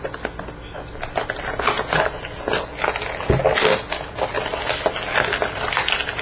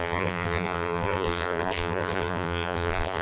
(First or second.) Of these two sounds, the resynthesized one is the second